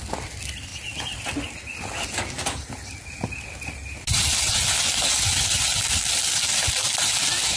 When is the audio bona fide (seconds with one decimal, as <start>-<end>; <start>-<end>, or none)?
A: 0.0-7.6